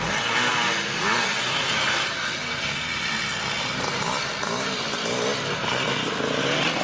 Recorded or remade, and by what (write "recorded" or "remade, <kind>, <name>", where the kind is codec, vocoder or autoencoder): recorded